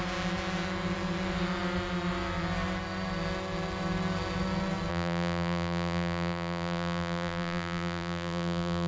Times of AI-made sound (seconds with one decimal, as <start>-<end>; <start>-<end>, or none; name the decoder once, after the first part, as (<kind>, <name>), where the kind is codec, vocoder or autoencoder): 4.9-8.9 (vocoder, BigVGAN v2)